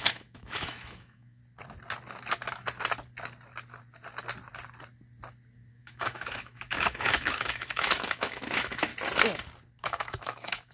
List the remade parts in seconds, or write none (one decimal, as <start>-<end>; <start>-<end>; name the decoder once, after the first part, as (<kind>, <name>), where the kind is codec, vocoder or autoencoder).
0.0-1.4 (autoencoder, DAC-VAE); 5.7-8.9; 9.8-10.7